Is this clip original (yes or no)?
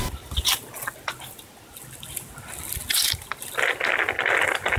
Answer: yes